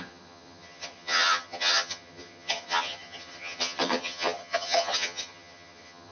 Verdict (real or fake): fake